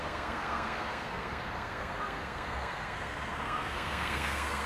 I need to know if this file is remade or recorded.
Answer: remade